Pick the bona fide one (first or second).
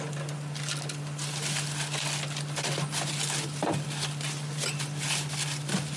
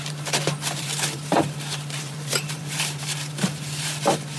first